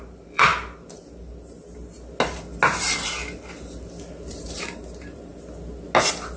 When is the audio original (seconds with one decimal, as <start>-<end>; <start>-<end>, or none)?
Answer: 0.5-4.3; 5.3-6.4